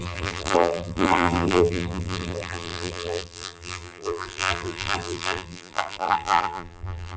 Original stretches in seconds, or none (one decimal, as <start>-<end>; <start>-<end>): none

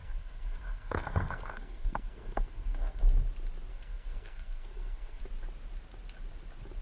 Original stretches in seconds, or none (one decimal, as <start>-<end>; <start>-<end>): 3.0-3.7; 5.2-6.8

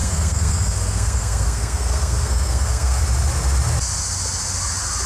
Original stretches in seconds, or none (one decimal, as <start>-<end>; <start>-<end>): 3.0-5.1

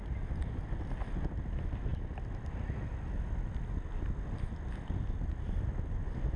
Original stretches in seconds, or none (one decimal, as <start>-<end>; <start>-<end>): 0.0-6.4

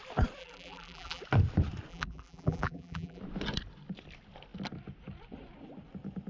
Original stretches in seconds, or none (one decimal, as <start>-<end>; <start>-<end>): 0.0-0.4; 1.2-1.9; 3.2-6.3

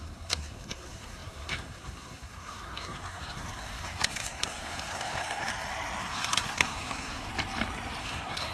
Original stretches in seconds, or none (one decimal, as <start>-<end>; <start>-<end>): 5.5-6.0; 7.3-8.0

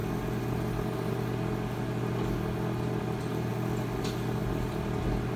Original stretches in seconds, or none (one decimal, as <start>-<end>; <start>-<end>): 0.0-5.4

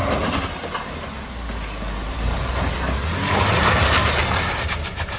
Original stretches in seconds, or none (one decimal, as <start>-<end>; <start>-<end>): 0.0-2.0; 3.2-4.0